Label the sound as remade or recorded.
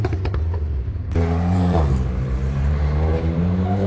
remade